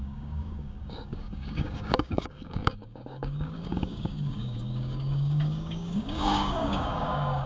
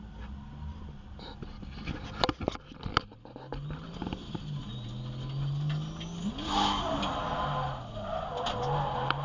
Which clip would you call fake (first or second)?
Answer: first